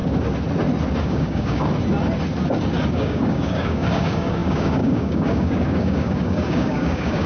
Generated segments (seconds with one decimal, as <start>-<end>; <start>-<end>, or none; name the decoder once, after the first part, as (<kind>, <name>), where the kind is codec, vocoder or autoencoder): 1.0-1.7 (codec, DAC); 2.9-7.3